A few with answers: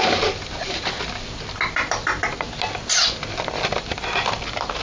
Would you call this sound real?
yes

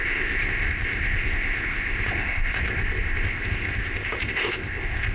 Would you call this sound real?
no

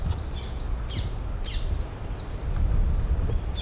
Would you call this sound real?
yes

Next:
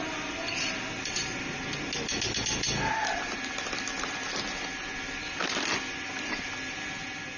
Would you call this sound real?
yes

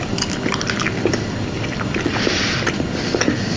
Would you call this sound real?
yes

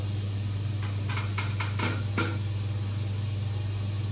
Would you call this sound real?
yes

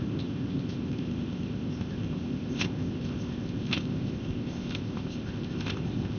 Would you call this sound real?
no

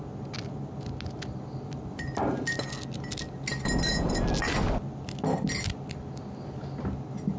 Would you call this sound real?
yes